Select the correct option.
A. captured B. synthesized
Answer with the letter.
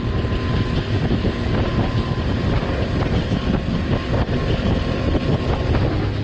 A